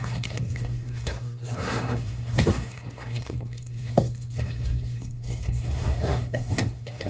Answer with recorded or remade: remade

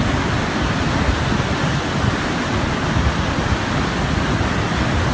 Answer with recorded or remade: recorded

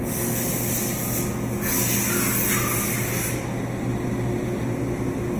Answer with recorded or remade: recorded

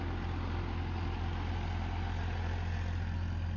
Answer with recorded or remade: recorded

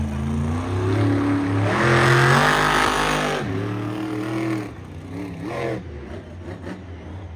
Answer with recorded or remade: recorded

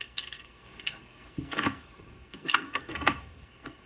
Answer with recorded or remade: remade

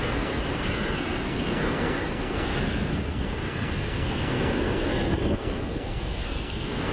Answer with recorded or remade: remade